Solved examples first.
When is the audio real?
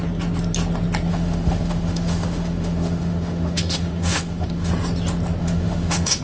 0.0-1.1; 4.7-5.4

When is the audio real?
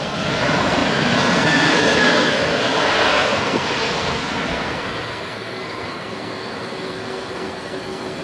none